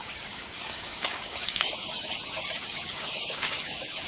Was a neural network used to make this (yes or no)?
yes